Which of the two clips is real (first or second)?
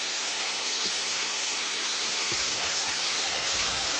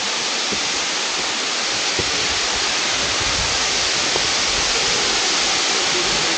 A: second